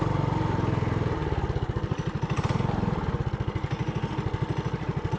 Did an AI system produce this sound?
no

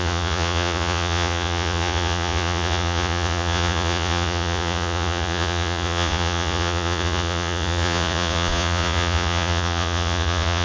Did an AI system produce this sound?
yes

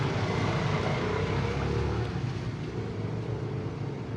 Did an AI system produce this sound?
no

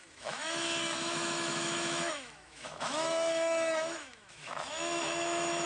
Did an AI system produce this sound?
yes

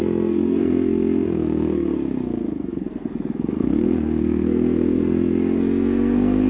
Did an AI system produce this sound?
yes